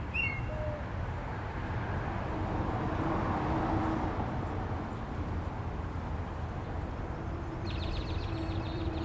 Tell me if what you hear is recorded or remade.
recorded